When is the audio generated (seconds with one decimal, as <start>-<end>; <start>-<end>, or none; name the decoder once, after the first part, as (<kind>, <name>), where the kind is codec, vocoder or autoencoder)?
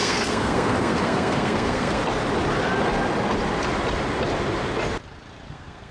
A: 0.0-2.0 (codec, SNAC); 5.5-5.9